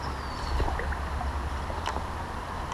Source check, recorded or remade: recorded